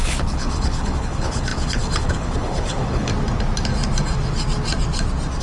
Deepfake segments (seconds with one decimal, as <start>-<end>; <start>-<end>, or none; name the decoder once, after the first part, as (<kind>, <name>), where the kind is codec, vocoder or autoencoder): 0.0-3.1 (codec, HILCodec)